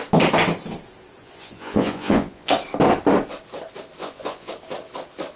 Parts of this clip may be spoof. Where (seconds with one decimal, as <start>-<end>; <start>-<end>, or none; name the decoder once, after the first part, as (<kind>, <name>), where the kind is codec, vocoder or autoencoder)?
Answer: 1.2-2.5 (vocoder, Vocos); 4.0-4.5